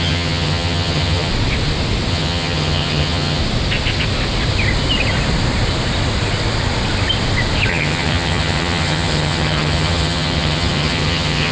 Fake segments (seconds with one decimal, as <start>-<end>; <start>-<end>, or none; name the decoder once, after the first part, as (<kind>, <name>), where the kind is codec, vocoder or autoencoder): 0.0-1.3 (vocoder, HiFi-GAN); 2.1-3.4; 7.7-11.5